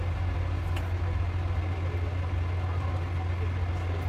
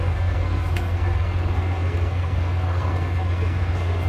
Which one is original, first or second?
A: first